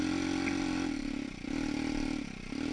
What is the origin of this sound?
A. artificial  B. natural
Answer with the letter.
B